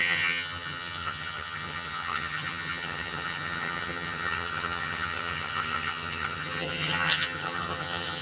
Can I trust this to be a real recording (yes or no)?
no